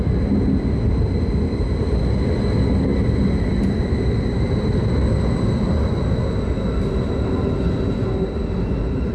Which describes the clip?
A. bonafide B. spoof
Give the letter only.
A